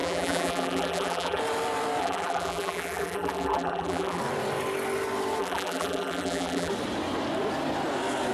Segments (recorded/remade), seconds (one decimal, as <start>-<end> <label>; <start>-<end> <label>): 0.0-1.4 remade; 1.4-2.0 recorded; 2.0-4.2 remade; 4.2-5.4 recorded; 5.4-6.7 remade; 6.7-8.3 recorded